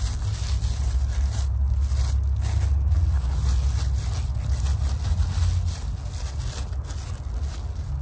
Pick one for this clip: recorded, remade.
recorded